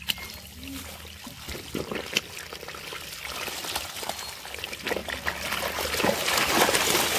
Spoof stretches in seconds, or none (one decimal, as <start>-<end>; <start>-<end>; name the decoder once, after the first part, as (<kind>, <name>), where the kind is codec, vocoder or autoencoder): none